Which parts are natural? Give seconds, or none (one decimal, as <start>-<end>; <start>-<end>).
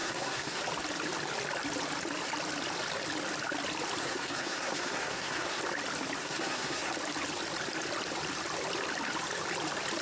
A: 0.6-4.0; 5.6-6.2; 6.9-10.0